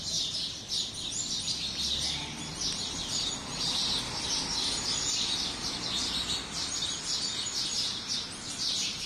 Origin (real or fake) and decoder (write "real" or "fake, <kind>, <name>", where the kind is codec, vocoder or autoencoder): real